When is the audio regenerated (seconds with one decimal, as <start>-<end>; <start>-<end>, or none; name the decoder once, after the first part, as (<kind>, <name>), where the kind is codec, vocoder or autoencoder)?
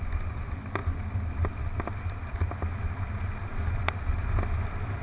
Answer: none